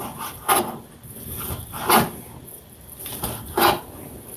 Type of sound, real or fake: real